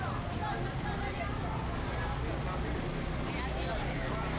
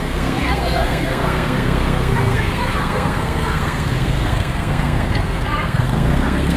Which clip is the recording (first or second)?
first